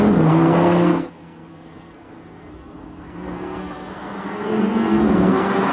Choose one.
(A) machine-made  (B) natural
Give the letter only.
A